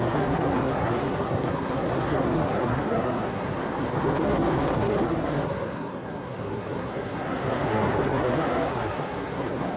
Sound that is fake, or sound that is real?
fake